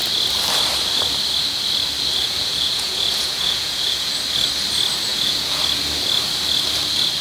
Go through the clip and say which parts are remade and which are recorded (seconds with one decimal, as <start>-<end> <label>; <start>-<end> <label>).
0.0-2.2 recorded; 2.2-4.1 remade; 4.1-5.1 recorded; 5.1-5.6 remade; 5.6-7.2 recorded